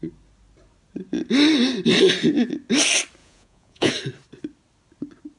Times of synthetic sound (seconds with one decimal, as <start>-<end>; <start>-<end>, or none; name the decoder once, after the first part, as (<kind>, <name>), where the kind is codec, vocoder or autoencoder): 3.2-3.9 (vocoder, Vocos)